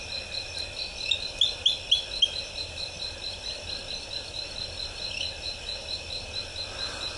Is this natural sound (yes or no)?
yes